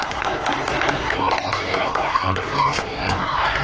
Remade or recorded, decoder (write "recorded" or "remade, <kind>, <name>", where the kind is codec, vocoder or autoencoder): remade, codec, SNAC